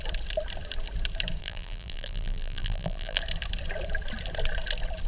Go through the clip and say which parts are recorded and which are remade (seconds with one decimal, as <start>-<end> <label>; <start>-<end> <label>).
0.0-1.4 recorded; 1.4-3.2 remade; 3.2-5.1 recorded